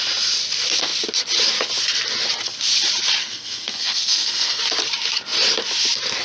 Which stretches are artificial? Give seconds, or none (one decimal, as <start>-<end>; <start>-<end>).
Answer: 3.2-4.6